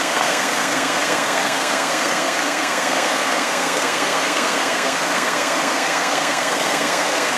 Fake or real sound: fake